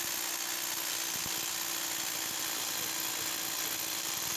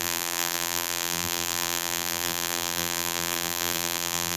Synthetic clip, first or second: second